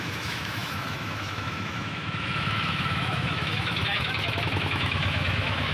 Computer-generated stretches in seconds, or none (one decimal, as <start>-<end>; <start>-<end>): 0.0-5.7